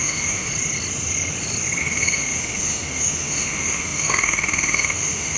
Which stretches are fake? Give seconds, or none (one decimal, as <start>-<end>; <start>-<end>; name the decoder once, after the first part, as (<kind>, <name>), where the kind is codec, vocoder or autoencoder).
0.0-0.5 (autoencoder, DAC-VAE); 1.8-5.4

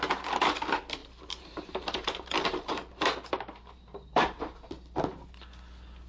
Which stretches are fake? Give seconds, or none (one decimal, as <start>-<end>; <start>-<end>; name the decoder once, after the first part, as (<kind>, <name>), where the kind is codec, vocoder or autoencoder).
1.0-4.7 (vocoder, BigVGAN v2)

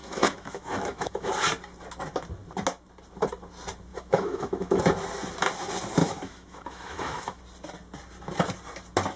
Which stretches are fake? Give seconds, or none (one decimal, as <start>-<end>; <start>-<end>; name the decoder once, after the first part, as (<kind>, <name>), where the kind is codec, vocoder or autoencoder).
0.0-1.3 (autoencoder, DAC-VAE); 3.9-4.8; 6.0-7.4

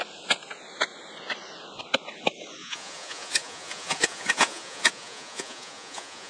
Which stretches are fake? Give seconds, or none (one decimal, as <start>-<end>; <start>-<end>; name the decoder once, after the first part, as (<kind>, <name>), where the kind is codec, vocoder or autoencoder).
2.6-6.3 (vocoder, Vocos)